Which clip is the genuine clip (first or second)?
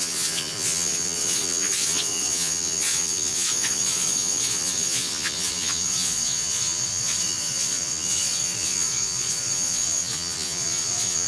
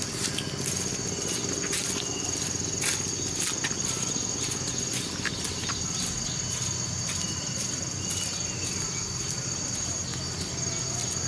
second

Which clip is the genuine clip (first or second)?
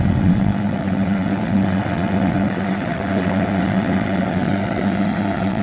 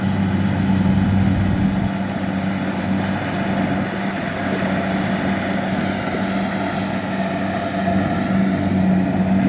second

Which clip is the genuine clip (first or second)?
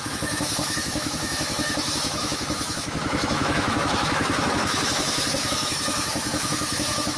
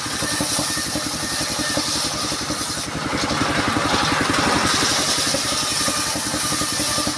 second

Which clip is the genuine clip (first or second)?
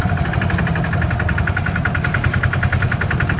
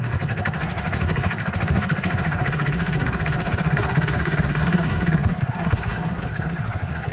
first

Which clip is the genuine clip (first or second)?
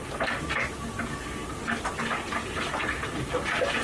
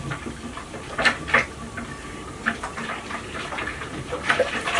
first